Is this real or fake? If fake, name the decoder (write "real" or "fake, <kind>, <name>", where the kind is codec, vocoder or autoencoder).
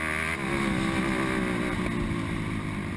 real